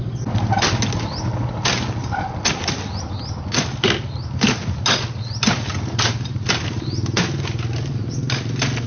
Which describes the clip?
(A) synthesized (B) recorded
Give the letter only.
B